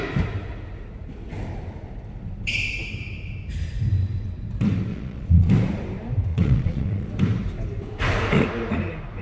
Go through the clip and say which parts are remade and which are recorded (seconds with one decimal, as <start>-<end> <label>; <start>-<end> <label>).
0.0-4.9 recorded; 4.9-5.5 remade; 5.5-6.3 recorded; 6.3-7.1 remade; 7.1-9.2 recorded